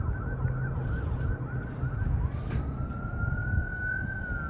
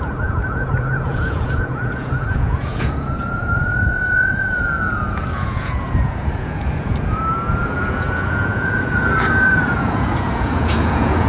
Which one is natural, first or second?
first